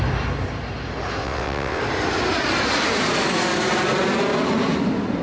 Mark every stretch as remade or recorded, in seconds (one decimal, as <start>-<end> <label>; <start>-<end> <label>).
0.0-1.2 recorded; 1.2-1.8 remade; 1.8-5.2 recorded